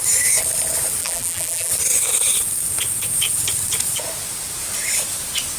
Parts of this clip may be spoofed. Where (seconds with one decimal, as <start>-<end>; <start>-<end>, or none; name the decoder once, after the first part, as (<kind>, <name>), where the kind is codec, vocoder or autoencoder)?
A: 1.0-1.7 (vocoder, BigVGAN v2)